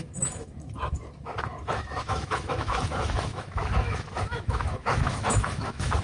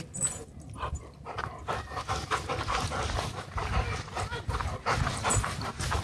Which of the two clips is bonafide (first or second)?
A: second